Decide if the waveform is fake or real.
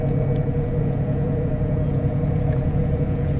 fake